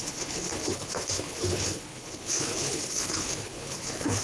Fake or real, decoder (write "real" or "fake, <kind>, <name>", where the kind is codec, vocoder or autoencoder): fake, codec, HILCodec